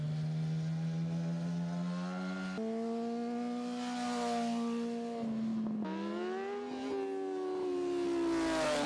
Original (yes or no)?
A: yes